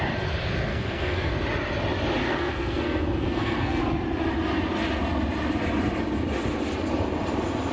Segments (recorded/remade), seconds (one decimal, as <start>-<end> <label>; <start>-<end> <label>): 0.0-0.7 recorded; 0.7-1.3 remade; 1.3-2.2 recorded; 2.2-3.8 remade; 3.8-7.7 recorded